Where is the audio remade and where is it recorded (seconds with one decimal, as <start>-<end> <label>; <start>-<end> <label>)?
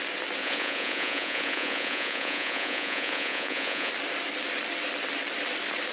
0.0-0.4 recorded; 0.4-3.9 remade; 3.9-5.9 recorded